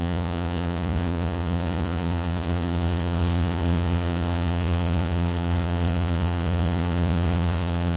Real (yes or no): no